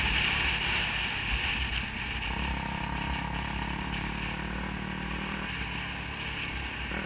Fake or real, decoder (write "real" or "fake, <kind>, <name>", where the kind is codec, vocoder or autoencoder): real